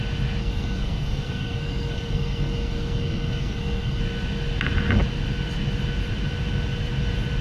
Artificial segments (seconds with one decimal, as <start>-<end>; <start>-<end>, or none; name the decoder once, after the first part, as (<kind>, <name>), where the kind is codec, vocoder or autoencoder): 0.4-4.0 (codec, SNAC)